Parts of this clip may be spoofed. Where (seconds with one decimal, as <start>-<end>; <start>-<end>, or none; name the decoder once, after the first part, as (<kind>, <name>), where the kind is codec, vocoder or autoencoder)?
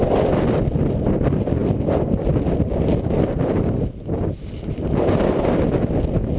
none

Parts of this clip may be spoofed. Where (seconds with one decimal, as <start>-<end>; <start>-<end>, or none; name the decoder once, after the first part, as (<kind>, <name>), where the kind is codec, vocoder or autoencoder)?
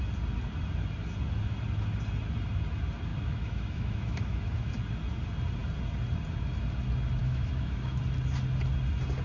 3.1-4.7 (autoencoder, DAC-VAE); 7.2-8.0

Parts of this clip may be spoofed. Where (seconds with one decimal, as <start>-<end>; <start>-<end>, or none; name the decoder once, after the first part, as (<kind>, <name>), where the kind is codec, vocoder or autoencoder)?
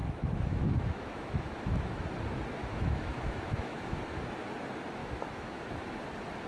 0.0-2.0 (autoencoder, DAC-VAE); 2.6-4.0; 5.0-5.8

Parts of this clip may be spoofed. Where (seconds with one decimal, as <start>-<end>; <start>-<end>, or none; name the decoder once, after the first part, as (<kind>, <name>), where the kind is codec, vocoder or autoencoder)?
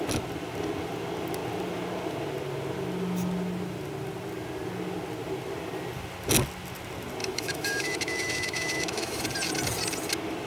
7.2-9.2 (autoencoder, DAC-VAE)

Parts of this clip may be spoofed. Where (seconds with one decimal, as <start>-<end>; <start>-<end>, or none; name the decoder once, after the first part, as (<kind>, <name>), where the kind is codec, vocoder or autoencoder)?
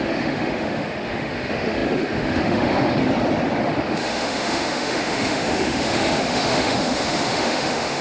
0.0-3.0 (autoencoder, DAC-VAE); 3.6-8.0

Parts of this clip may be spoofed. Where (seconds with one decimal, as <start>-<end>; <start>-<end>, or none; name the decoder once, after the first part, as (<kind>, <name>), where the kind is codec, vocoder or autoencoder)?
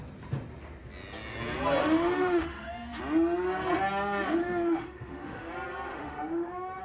1.8-3.0 (autoencoder, DAC-VAE); 4.4-5.5; 5.9-6.8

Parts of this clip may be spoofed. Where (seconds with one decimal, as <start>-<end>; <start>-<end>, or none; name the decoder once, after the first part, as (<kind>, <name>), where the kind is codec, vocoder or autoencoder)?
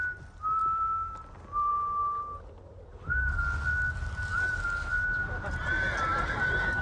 none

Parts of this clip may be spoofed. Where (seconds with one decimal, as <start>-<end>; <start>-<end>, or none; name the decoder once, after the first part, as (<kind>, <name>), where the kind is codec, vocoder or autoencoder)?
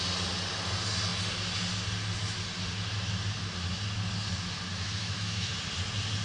4.7-5.5 (autoencoder, DAC-VAE)